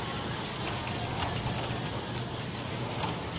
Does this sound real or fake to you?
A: real